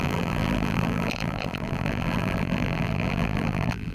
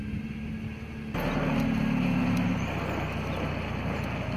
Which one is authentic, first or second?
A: second